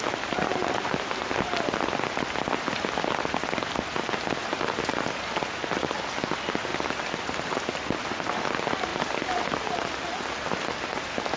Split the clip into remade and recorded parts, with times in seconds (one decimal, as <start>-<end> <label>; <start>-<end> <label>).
0.0-0.5 recorded; 0.5-1.5 remade; 1.5-8.9 recorded; 8.9-10.1 remade; 10.1-11.4 recorded

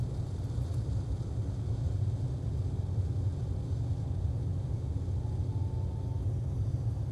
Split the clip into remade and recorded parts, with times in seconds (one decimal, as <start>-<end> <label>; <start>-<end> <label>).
0.0-7.1 recorded

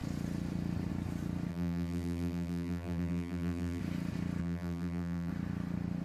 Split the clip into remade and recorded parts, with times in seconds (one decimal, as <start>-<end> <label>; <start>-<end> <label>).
0.0-1.5 recorded; 1.5-3.8 remade; 3.8-4.4 recorded; 4.4-5.3 remade; 5.3-6.0 recorded

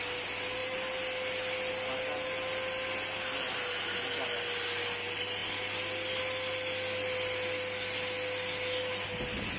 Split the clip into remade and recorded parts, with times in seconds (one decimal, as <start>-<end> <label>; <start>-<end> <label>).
0.0-9.6 recorded

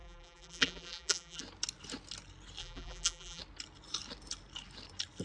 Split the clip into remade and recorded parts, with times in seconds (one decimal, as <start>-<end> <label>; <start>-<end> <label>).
0.0-1.4 remade; 1.4-2.6 recorded; 2.6-3.4 remade; 3.4-5.2 recorded

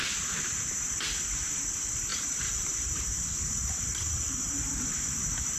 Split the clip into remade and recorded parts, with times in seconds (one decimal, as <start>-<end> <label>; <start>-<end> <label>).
0.0-2.1 recorded; 2.1-5.6 remade

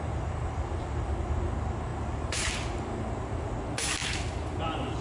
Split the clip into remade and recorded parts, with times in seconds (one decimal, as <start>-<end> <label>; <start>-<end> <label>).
0.0-1.9 recorded; 1.9-2.5 remade; 2.5-5.0 recorded